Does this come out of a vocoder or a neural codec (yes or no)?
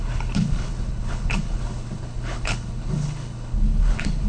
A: yes